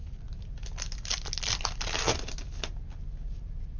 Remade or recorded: recorded